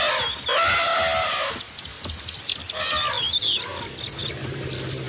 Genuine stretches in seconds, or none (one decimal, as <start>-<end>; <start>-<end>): 0.0-5.1